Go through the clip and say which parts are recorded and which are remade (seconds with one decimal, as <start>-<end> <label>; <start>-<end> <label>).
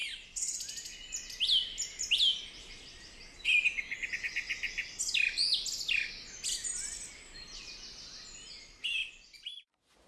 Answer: 0.0-10.1 recorded